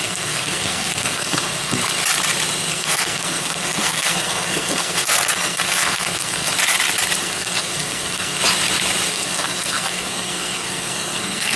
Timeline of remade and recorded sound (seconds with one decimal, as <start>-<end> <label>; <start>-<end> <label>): 0.0-1.8 remade; 1.8-2.7 recorded; 2.7-6.5 remade; 6.5-7.2 recorded; 7.2-8.4 remade; 8.4-9.1 recorded; 9.1-11.6 remade